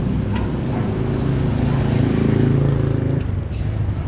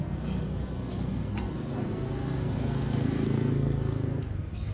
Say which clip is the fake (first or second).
second